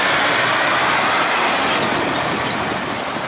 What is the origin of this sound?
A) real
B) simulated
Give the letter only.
A